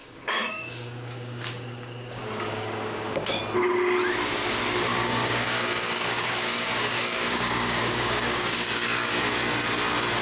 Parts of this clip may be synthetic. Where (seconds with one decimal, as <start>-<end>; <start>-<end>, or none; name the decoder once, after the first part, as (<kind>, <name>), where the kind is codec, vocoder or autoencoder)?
0.0-3.4 (codec, DAC); 5.0-9.2